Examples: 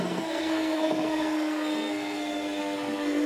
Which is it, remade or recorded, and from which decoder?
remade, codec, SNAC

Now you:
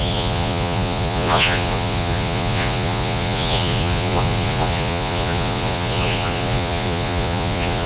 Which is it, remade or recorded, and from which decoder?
remade, vocoder, Vocos